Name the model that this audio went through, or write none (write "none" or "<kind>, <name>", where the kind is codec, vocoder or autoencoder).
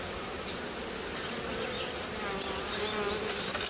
none